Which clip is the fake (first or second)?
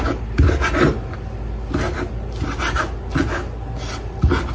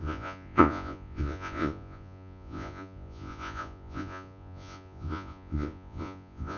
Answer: second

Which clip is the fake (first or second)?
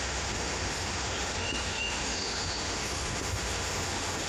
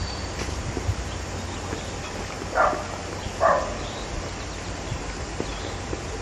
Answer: first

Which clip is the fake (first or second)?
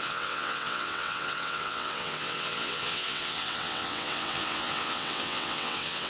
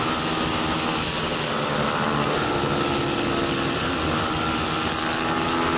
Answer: first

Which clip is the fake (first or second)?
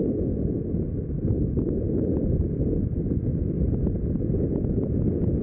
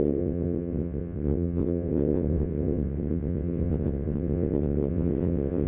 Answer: second